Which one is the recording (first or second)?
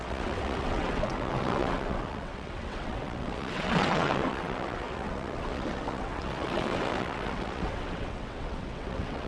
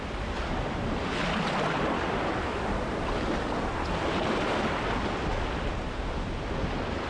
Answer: second